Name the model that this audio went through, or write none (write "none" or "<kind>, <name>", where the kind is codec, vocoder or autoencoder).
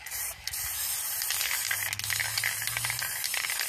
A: none